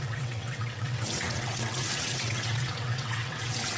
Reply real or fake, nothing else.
fake